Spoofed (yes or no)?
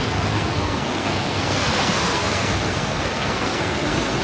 yes